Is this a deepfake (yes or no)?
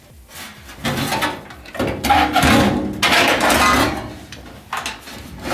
no